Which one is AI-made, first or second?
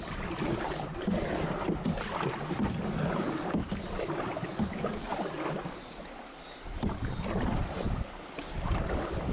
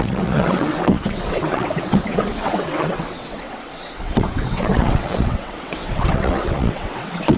second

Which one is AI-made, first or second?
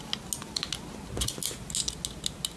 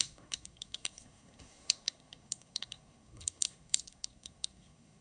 second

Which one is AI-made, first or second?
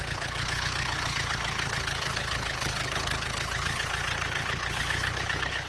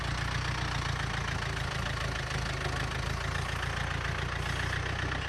first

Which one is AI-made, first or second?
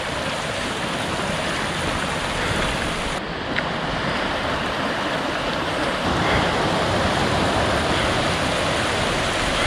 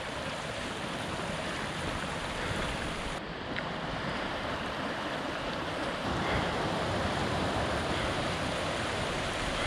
second